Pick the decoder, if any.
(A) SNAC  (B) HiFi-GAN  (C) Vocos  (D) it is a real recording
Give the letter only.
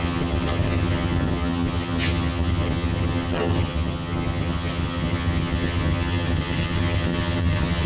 B